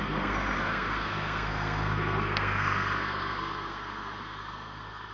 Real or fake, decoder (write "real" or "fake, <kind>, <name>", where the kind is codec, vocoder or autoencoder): fake, codec, SNAC